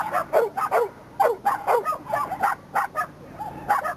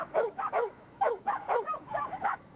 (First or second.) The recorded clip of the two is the first